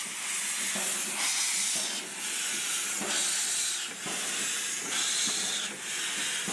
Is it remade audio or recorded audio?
recorded